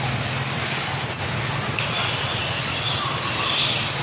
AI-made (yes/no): no